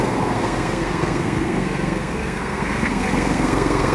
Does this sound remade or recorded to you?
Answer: remade